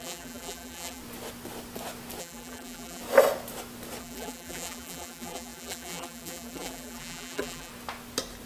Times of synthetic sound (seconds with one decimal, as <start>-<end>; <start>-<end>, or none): 0.0-1.0; 2.2-3.0; 4.0-7.7